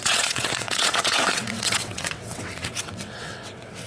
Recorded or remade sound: remade